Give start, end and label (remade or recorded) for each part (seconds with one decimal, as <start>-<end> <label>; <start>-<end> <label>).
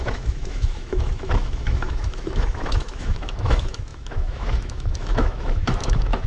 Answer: 0.0-6.3 remade